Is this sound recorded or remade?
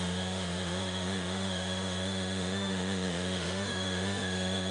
remade